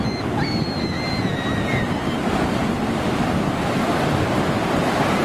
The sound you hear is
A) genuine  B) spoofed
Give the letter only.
A